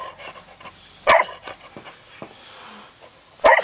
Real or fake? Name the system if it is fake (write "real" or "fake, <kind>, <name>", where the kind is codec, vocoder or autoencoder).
real